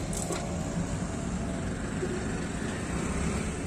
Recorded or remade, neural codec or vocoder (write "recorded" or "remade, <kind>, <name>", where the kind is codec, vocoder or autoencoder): recorded